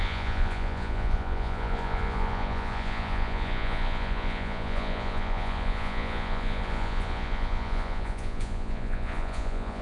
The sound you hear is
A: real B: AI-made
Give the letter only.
B